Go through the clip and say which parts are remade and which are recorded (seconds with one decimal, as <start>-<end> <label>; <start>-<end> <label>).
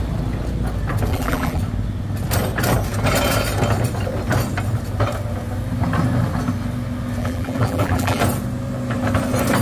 0.0-1.1 recorded; 1.1-1.6 remade; 1.6-7.2 recorded; 7.2-8.2 remade; 8.2-9.6 recorded